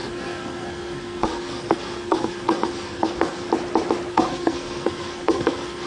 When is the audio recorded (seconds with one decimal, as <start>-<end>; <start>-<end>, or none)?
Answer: 3.5-4.1